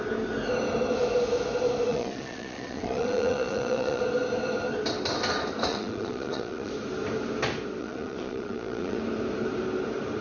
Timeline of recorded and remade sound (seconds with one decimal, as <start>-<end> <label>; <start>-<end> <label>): 0.0-1.9 recorded; 1.9-4.0 remade; 4.0-5.7 recorded; 5.7-6.7 remade; 6.7-7.8 recorded; 7.8-9.0 remade; 9.0-10.2 recorded